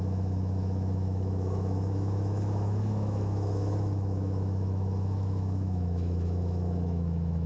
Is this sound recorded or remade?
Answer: remade